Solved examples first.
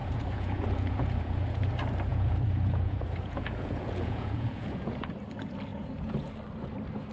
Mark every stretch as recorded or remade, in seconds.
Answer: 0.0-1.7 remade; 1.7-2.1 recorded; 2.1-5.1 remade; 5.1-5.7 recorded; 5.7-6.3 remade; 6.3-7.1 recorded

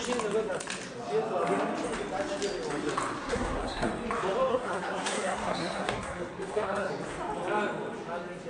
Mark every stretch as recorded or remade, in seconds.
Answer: 0.0-3.2 recorded; 3.2-3.9 remade; 3.9-4.5 recorded; 4.5-6.9 remade; 6.9-8.5 recorded

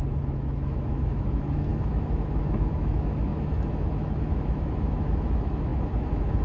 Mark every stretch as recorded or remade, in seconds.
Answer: 0.0-6.4 remade

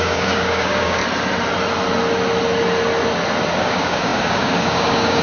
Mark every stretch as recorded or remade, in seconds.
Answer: 0.0-1.0 remade; 1.0-3.6 recorded; 3.6-5.2 remade

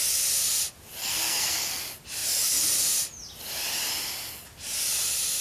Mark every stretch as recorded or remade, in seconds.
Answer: 0.0-1.0 recorded; 1.0-1.8 remade; 1.8-5.4 recorded

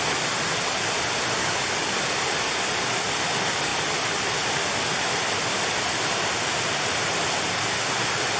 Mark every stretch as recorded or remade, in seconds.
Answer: 0.0-1.4 recorded; 1.4-1.9 remade; 1.9-8.4 recorded

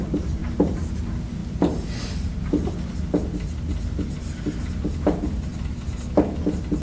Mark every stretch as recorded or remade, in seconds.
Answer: 0.0-0.4 recorded; 0.4-0.9 remade; 0.9-6.8 recorded